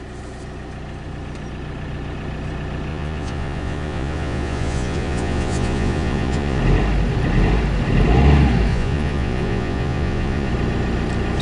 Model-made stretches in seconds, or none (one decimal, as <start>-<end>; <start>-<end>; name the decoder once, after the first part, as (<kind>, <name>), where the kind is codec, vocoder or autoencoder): 2.9-6.6 (vocoder, Vocos); 8.7-10.5